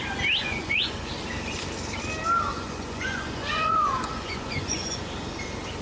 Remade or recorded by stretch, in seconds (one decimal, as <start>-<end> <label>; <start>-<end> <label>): 0.0-0.4 recorded; 0.4-1.1 remade; 1.1-2.5 recorded; 2.5-5.0 remade; 5.0-5.8 recorded